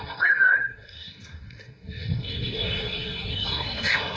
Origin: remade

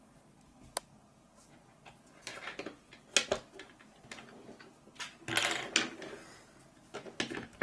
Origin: recorded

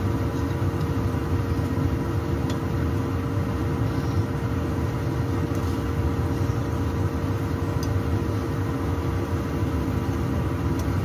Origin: recorded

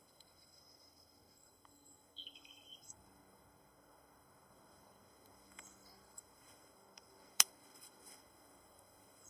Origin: remade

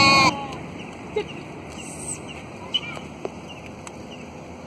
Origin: recorded